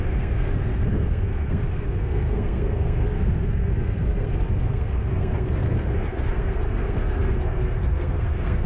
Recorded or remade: remade